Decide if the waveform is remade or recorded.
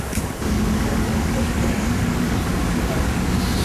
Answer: remade